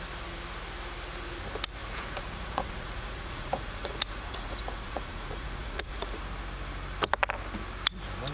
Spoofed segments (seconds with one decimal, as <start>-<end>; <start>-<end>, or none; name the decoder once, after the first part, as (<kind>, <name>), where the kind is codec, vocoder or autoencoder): 1.8-6.2 (vocoder, Vocos)

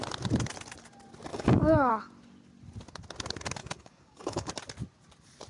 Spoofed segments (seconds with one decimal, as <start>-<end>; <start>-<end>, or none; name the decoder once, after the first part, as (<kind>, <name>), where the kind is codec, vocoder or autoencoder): 1.3-1.9 (codec, DAC); 3.6-4.5

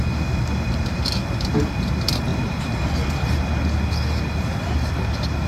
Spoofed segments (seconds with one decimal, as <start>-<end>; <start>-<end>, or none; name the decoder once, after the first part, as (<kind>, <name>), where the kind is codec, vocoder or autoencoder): none

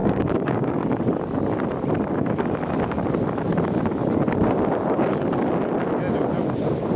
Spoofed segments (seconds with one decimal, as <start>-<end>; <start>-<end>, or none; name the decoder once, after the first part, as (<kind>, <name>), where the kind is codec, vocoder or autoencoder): 0.0-1.0 (codec, DAC)